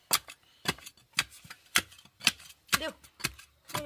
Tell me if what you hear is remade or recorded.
recorded